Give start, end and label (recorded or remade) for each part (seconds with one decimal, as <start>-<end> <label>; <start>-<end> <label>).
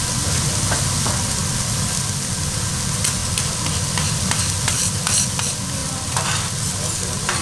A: 0.0-7.4 recorded